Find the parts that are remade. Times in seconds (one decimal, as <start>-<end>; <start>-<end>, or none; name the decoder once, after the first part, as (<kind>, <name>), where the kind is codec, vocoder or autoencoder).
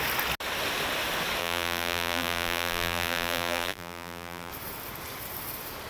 1.4-4.5 (vocoder, BigVGAN v2)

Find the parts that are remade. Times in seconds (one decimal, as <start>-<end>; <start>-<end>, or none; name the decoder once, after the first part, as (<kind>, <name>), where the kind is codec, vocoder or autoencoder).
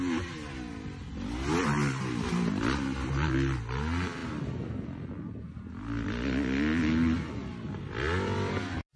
none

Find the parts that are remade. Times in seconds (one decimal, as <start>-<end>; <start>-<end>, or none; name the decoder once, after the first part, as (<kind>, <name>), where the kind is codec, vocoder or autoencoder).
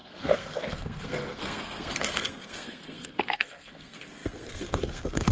0.0-5.3 (codec, SNAC)